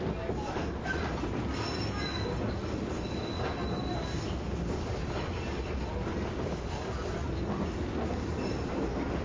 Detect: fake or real real